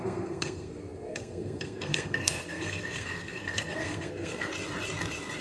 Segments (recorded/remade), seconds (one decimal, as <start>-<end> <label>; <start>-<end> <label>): 0.0-4.5 remade; 4.5-5.4 recorded